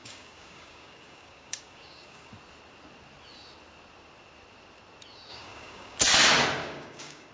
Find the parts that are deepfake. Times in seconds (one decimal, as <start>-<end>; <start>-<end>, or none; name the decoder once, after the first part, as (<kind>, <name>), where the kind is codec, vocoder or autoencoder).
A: 0.0-2.3 (codec, DAC); 5.3-6.0; 6.6-7.3